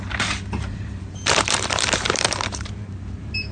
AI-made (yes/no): yes